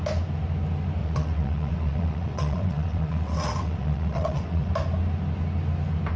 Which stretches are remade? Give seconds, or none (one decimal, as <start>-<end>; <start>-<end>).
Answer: 1.0-4.7